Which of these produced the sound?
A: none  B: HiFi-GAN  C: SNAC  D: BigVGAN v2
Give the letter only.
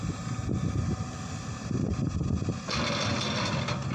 A